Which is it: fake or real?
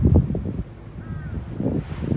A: real